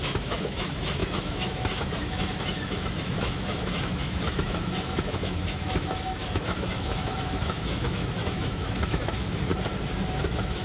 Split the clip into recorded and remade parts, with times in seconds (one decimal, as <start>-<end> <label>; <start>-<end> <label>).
0.0-9.5 remade; 9.5-10.1 recorded; 10.1-10.6 remade